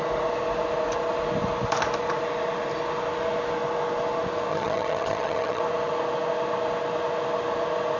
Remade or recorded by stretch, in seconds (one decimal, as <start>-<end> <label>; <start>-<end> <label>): 0.0-4.5 recorded; 4.5-5.6 remade; 5.6-8.0 recorded

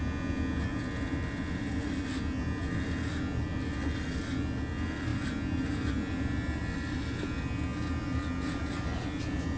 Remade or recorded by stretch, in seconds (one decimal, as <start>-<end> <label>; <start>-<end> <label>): 0.0-9.6 recorded

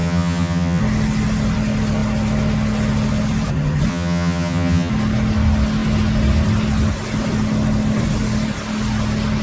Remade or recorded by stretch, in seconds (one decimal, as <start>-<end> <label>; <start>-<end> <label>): 0.0-0.8 remade; 0.8-3.9 recorded; 3.9-4.9 remade; 4.9-9.4 recorded

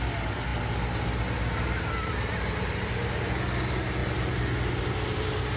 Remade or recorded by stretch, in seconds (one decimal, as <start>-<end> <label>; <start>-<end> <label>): 0.0-5.6 recorded